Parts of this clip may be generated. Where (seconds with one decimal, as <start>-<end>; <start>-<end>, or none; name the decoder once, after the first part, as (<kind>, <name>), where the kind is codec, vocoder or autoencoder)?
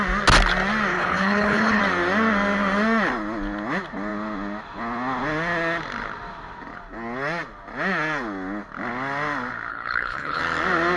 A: 0.9-1.8 (codec, HILCodec); 9.7-10.4